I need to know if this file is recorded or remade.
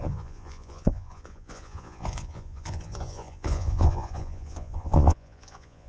remade